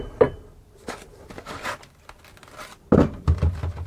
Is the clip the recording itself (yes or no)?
yes